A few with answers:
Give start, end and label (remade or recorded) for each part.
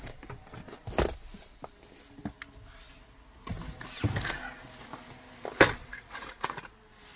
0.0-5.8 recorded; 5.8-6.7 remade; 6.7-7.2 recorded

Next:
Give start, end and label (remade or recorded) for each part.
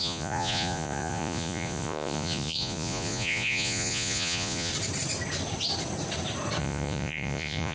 0.0-4.7 remade; 4.7-6.6 recorded; 6.6-7.7 remade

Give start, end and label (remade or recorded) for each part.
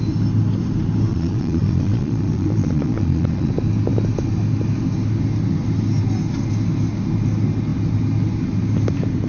0.0-1.1 recorded; 1.1-3.5 remade; 3.5-9.3 recorded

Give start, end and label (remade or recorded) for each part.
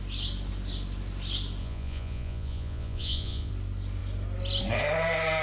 0.0-1.6 recorded; 1.6-3.5 remade; 3.5-5.4 recorded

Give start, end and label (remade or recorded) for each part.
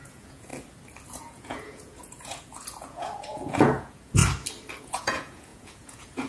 0.0-0.5 remade; 0.5-1.1 recorded; 1.1-4.2 remade; 4.2-4.8 recorded; 4.8-6.3 remade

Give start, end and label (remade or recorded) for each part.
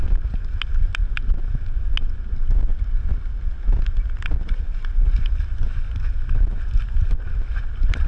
0.0-8.1 recorded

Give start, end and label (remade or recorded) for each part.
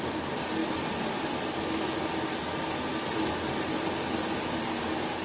0.0-5.2 recorded